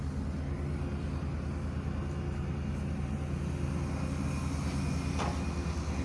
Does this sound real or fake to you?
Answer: real